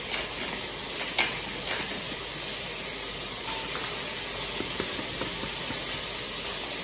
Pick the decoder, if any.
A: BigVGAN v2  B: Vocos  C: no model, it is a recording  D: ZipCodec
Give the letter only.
C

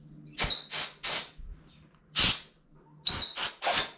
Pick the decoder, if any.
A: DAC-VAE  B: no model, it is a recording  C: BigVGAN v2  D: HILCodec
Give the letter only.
B